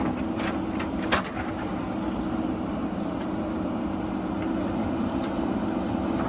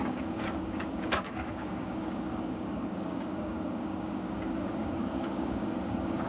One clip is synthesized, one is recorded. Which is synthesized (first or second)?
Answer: second